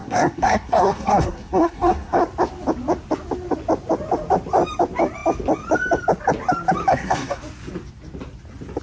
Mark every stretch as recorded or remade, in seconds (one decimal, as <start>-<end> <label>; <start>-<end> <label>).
0.0-2.2 remade; 2.2-6.9 recorded; 6.9-7.4 remade; 7.4-8.8 recorded